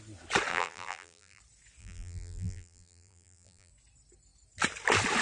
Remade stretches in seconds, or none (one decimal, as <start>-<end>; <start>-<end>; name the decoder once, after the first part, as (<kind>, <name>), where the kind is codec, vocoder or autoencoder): 0.5-1.4 (vocoder, BigVGAN v2); 1.8-3.7